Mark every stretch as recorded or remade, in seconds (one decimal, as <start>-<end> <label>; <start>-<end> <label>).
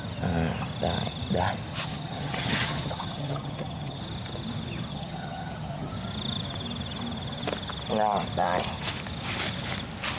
0.0-1.7 recorded; 1.7-4.0 remade; 4.0-4.9 recorded; 4.9-5.9 remade; 5.9-10.2 recorded